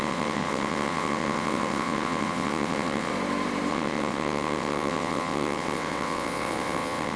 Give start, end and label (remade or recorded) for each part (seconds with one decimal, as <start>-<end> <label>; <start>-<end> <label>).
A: 0.0-3.1 remade; 3.1-3.7 recorded; 3.7-7.2 remade